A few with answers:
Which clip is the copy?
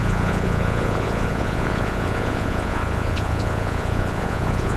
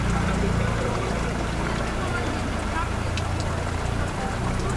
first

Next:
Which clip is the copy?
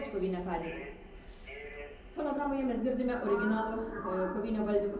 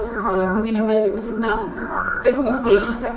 second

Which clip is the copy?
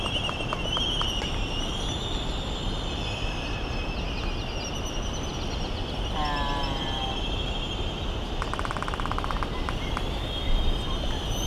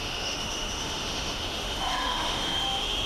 second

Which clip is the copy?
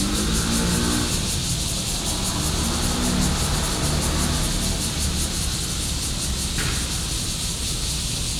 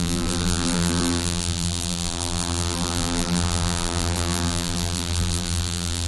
second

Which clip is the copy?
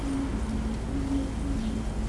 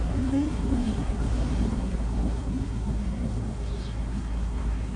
second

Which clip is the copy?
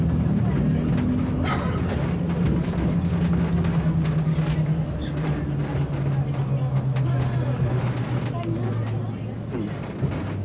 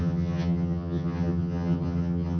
second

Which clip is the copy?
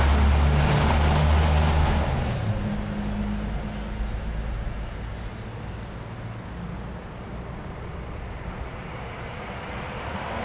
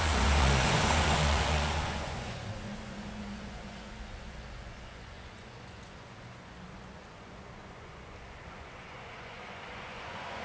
second